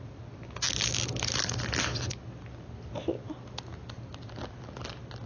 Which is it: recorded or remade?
recorded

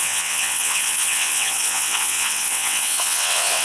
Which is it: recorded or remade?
remade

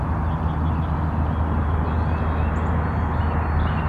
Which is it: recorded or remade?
recorded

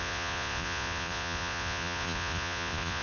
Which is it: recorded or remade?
remade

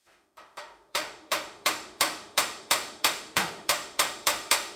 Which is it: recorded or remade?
remade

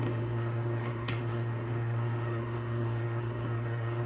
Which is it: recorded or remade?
remade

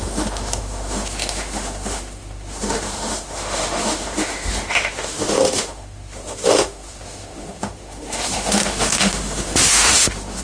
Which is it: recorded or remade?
remade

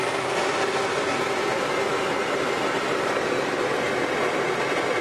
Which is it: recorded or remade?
recorded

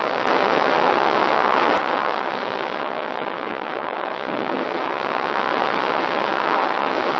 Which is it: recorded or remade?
remade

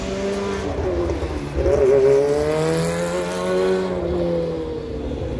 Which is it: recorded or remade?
recorded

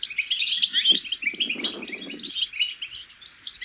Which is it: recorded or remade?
recorded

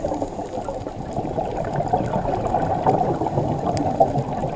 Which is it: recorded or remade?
recorded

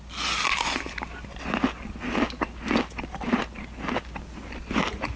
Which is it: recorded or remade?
recorded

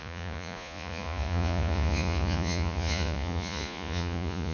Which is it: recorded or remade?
remade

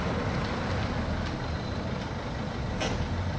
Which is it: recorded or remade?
recorded